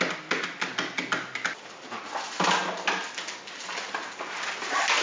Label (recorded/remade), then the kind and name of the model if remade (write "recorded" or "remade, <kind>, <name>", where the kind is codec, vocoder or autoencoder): recorded